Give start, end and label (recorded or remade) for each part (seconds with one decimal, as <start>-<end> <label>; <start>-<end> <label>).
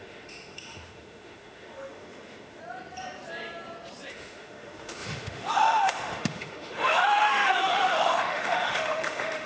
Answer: 0.0-2.6 remade; 2.6-4.1 recorded; 4.1-9.5 remade